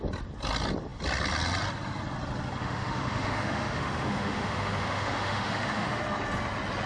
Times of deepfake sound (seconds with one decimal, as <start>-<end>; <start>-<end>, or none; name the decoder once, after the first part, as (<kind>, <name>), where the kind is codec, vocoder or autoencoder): 2.6-6.0 (autoencoder, DAC-VAE)